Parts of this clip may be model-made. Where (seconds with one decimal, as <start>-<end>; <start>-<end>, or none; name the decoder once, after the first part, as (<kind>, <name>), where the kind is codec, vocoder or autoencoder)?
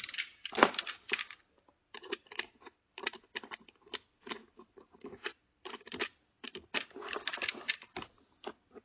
0.0-8.8 (vocoder, BigVGAN v2)